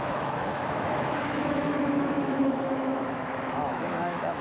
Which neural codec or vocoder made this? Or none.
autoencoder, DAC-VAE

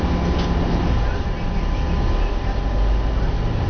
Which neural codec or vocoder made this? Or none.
none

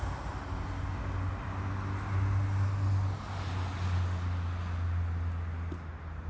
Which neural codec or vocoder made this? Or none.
none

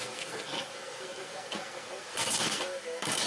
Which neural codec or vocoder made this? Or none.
codec, SNAC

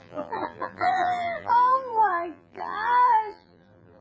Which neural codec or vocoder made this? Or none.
vocoder, BigVGAN v2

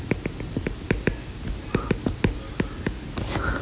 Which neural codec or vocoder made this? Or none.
none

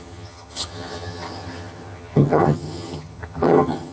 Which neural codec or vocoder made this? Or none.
vocoder, HiFi-GAN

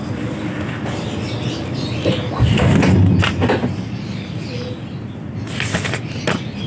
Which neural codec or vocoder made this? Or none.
none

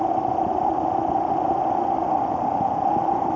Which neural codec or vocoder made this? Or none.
none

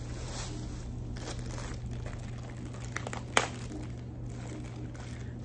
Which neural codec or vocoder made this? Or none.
none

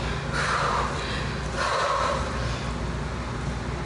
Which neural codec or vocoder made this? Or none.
none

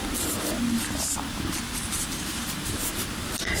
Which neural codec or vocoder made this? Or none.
vocoder, BigVGAN v2